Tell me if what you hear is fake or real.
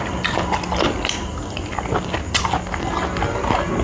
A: real